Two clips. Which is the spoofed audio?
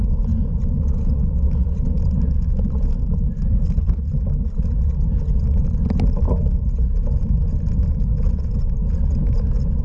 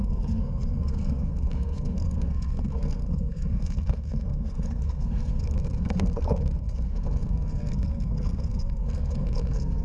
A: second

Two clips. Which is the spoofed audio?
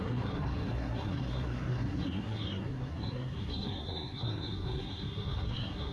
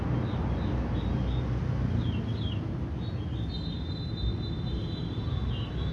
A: first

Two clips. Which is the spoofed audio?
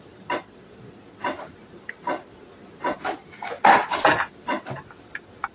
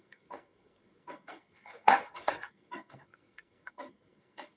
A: second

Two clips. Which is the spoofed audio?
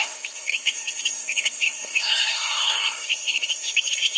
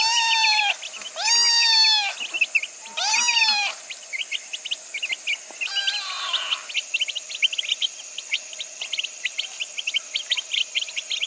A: first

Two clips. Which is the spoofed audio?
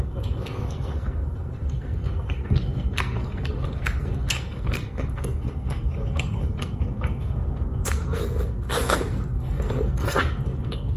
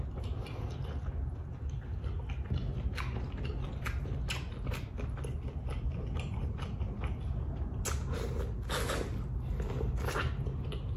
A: first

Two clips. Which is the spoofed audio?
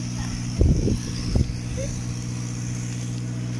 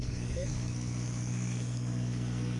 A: second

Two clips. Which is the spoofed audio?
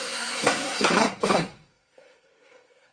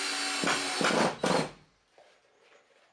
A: first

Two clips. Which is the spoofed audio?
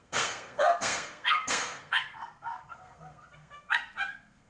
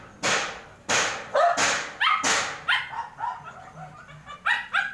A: first